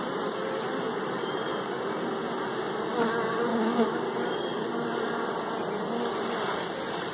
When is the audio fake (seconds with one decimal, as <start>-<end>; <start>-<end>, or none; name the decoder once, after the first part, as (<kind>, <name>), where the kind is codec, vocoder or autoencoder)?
3.5-4.0 (autoencoder, DAC-VAE)